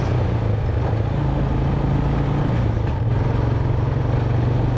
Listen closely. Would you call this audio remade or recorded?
recorded